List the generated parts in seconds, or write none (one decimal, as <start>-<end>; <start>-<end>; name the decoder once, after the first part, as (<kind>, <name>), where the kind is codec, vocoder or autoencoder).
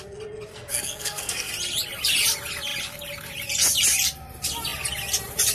0.5-1.5 (codec, SNAC)